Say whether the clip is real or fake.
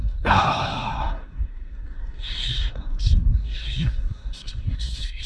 fake